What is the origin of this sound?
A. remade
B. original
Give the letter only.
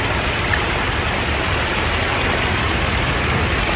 B